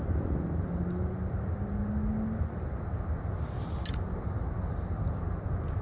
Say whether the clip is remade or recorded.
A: recorded